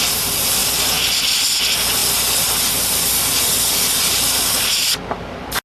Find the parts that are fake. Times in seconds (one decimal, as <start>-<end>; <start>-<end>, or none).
none